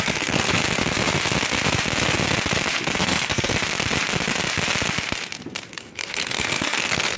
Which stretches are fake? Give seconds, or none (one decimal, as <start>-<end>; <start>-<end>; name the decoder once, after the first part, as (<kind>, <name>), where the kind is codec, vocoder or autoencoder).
0.0-0.6 (codec, SNAC); 3.0-3.5; 5.7-7.2